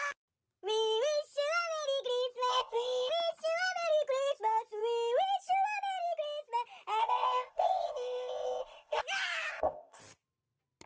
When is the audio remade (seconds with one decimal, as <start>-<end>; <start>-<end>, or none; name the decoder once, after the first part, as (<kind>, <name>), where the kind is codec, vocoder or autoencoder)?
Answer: 2.5-3.1 (codec, ZipCodec); 7.0-9.0; 9.5-10.0